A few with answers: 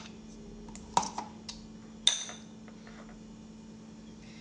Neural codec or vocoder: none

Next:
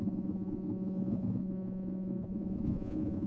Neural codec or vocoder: vocoder, Vocos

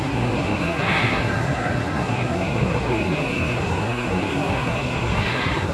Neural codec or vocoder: codec, SNAC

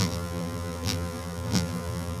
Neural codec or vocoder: vocoder, BigVGAN v2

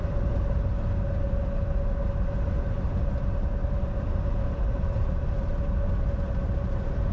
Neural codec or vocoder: none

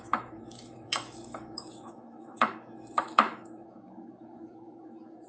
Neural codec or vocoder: autoencoder, DAC-VAE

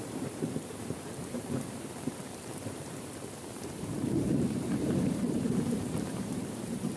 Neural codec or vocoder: vocoder, BigVGAN v2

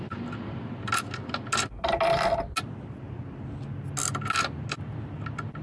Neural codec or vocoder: none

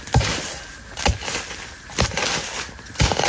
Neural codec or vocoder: none